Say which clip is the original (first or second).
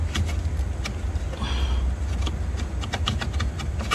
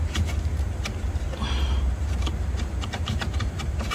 first